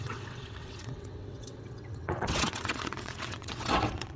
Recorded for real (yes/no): no